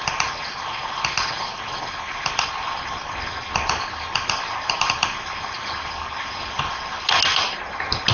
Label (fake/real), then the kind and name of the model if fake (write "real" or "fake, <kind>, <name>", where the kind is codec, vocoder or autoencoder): real